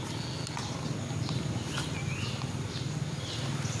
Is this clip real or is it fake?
real